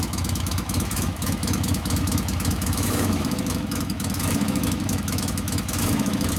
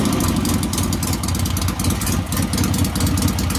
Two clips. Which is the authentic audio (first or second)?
second